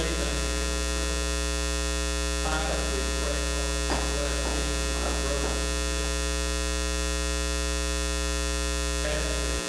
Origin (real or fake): real